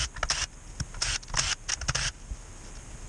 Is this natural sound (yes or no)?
yes